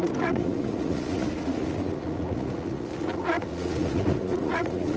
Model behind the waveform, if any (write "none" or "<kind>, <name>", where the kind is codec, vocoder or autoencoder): vocoder, Vocos